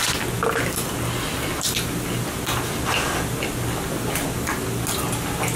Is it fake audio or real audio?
real